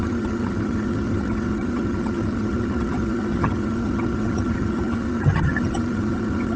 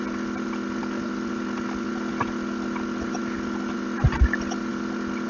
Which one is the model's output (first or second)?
first